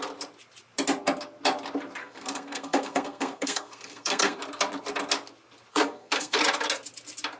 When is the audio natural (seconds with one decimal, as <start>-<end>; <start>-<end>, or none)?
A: 0.0-2.0; 4.4-5.7; 6.4-7.4